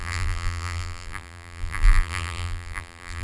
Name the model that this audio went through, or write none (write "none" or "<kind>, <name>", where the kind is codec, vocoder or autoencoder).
vocoder, BigVGAN v2